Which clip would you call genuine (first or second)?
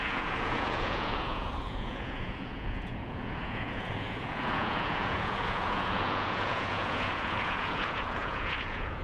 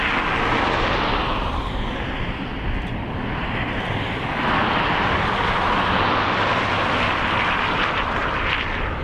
second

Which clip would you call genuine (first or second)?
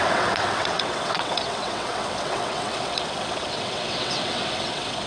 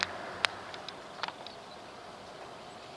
second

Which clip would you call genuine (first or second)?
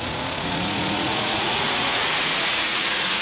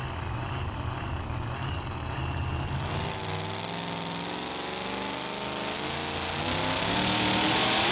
second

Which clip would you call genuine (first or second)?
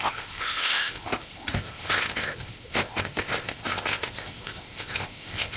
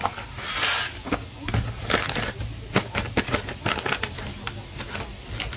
second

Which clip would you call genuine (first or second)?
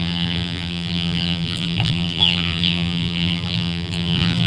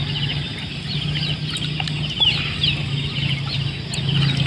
second